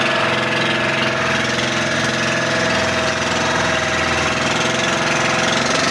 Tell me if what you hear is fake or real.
real